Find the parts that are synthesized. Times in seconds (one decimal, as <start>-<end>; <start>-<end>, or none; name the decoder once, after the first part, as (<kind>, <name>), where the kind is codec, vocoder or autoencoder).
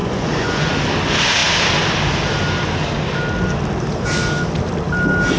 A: 0.0-0.7 (vocoder, Vocos)